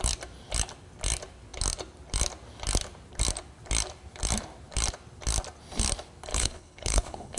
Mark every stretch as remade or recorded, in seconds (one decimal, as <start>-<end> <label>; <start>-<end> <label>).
0.0-6.3 recorded; 6.3-7.4 remade

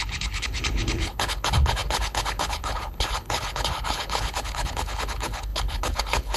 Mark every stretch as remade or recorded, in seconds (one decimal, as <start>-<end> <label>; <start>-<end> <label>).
0.0-6.4 remade

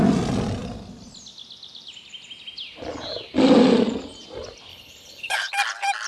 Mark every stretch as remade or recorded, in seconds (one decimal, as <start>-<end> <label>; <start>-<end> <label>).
0.0-4.7 recorded; 4.7-5.5 remade; 5.5-6.1 recorded